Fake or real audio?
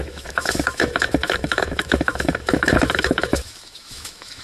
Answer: fake